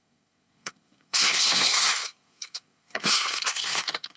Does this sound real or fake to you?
fake